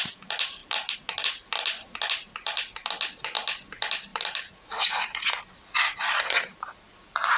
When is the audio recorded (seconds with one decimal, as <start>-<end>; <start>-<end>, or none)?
0.0-4.1; 4.9-7.4